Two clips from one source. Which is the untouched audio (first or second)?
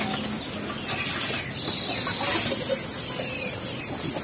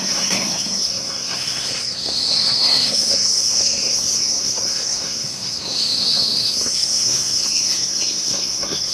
first